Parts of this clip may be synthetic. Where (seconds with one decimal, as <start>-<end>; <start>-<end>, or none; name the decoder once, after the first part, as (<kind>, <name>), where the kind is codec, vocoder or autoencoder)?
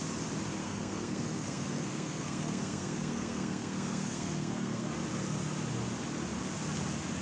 0.6-4.9 (codec, SNAC)